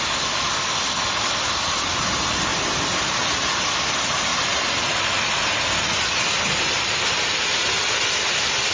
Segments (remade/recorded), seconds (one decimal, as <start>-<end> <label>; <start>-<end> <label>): 0.0-8.7 recorded